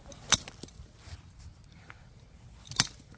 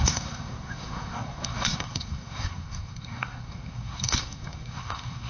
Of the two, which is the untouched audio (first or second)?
first